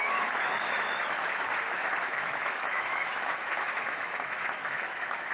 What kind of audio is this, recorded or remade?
remade